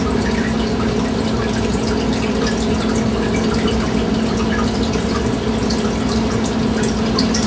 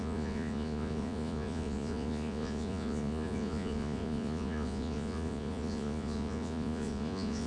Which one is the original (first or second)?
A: first